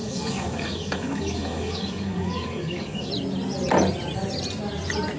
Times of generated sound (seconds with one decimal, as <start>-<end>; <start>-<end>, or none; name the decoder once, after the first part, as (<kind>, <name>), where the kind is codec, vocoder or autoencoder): 0.0-3.1 (codec, DAC)